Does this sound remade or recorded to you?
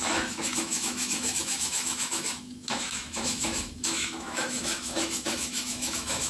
remade